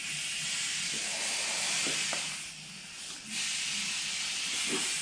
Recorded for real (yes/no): yes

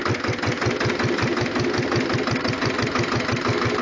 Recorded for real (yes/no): yes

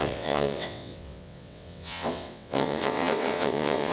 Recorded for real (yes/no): no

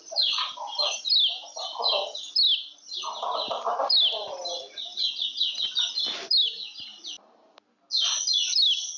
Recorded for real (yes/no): yes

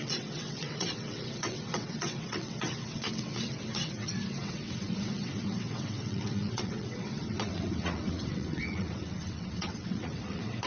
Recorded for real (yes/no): no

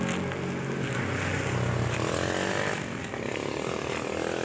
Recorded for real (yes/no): yes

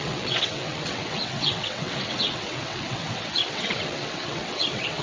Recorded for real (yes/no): no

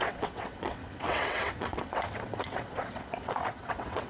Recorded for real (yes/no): no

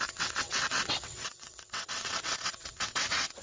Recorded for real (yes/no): no